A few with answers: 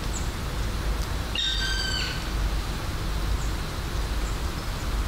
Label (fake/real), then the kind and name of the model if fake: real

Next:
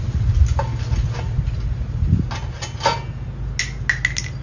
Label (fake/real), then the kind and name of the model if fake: real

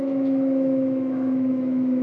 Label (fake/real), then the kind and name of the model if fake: fake, autoencoder, DAC-VAE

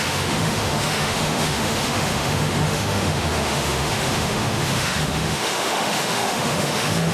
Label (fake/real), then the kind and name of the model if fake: fake, autoencoder, DAC-VAE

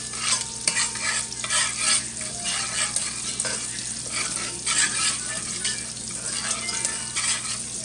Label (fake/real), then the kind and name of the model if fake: real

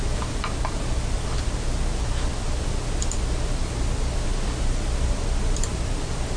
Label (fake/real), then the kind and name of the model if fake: real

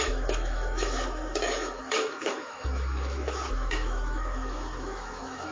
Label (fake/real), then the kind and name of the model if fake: fake, autoencoder, DAC-VAE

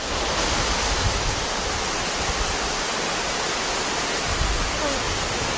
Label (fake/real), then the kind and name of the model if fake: real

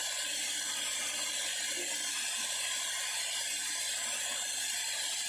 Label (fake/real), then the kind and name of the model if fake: real